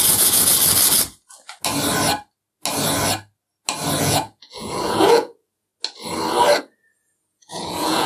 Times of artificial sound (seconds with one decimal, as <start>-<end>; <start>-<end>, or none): 0.0-0.5; 4.0-5.7; 6.6-8.1